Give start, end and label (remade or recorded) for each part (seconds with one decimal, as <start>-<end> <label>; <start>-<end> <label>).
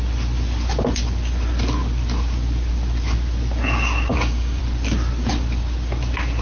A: 0.0-4.1 recorded; 4.1-4.6 remade; 4.6-6.4 recorded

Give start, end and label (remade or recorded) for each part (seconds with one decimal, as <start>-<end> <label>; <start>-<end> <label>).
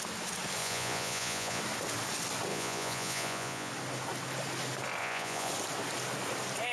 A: 0.0-0.6 recorded; 0.6-1.6 remade; 1.6-2.5 recorded; 2.5-3.7 remade; 3.7-5.0 recorded; 5.0-5.5 remade; 5.5-6.7 recorded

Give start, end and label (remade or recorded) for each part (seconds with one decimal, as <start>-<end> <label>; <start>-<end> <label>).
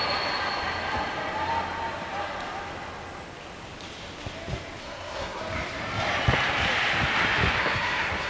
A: 0.0-4.8 recorded; 4.8-5.4 remade; 5.4-7.6 recorded; 7.6-8.3 remade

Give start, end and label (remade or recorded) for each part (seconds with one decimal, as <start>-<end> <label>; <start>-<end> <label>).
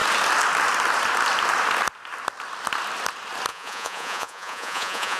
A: 0.0-3.5 recorded; 3.5-5.2 remade